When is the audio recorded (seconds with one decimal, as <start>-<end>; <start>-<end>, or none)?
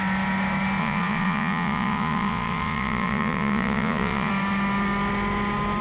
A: 0.0-0.8; 4.3-5.8